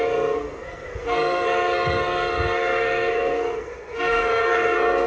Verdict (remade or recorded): remade